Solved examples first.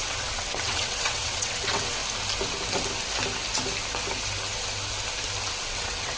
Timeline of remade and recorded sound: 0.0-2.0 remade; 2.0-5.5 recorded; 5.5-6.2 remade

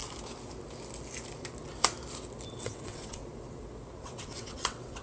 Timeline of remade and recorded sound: 0.0-2.5 recorded; 2.5-3.2 remade; 3.2-4.0 recorded; 4.0-5.0 remade

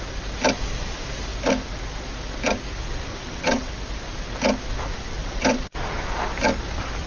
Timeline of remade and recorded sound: 0.0-3.1 recorded; 3.1-3.7 remade; 3.7-5.2 recorded; 5.2-5.8 remade; 5.8-7.1 recorded

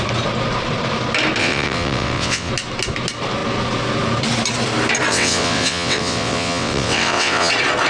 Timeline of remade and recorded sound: 0.0-1.4 recorded; 1.4-2.5 remade; 2.5-5.1 recorded; 5.1-7.5 remade; 7.5-7.9 recorded

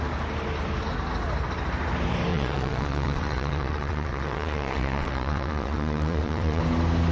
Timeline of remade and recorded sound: 0.0-2.3 recorded; 2.3-6.6 remade; 6.6-7.1 recorded

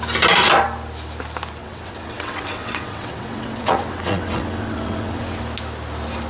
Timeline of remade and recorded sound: 0.0-1.6 recorded; 1.6-5.4 remade; 5.4-6.3 recorded